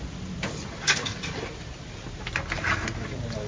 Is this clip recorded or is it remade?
recorded